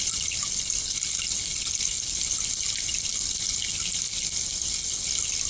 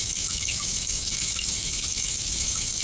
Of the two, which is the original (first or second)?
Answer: first